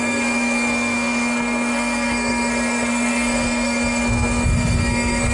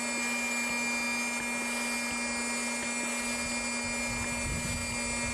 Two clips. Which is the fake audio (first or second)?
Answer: first